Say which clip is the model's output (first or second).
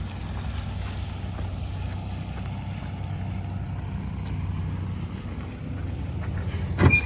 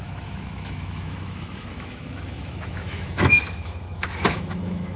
second